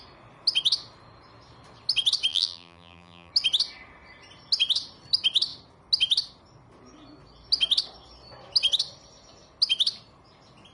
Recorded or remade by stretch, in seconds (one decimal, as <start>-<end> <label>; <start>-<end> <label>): 0.0-2.3 recorded; 2.3-3.3 remade; 3.3-10.7 recorded